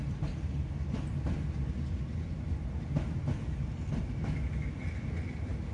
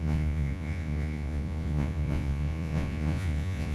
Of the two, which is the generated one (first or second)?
second